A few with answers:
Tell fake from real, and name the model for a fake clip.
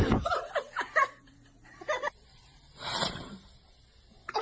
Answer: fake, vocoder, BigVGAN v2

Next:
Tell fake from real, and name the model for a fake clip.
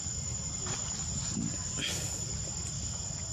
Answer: fake, vocoder, BigVGAN v2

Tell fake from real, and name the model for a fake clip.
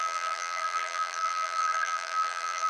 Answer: fake, vocoder, BigVGAN v2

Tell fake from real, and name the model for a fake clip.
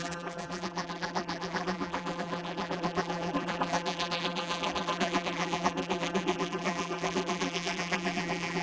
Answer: fake, vocoder, BigVGAN v2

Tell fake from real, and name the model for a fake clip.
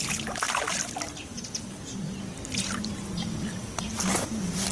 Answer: real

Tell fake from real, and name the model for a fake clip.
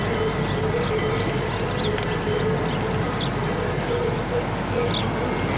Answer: real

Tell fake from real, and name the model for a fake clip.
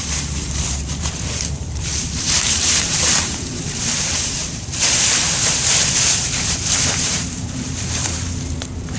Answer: fake, vocoder, BigVGAN v2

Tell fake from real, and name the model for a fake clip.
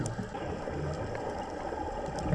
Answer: real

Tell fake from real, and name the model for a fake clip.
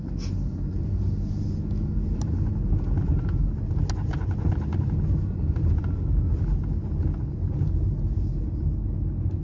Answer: real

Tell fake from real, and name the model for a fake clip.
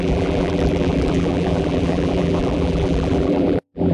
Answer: fake, vocoder, BigVGAN v2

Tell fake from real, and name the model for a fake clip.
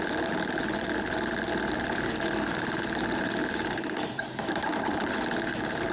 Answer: fake, vocoder, BigVGAN v2